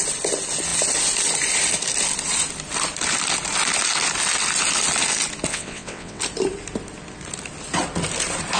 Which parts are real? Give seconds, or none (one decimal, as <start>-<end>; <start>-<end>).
0.0-5.5; 6.2-8.6